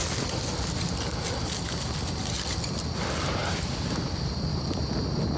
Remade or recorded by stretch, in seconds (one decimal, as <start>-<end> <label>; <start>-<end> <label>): 0.0-5.4 recorded